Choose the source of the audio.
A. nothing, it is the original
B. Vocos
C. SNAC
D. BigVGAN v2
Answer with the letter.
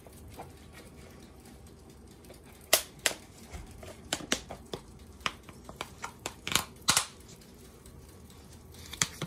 D